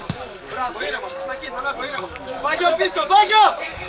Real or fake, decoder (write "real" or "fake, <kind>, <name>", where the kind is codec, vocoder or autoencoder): fake, codec, DAC